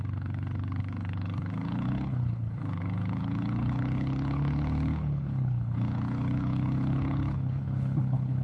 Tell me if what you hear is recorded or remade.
remade